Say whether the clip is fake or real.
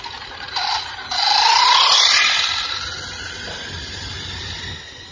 real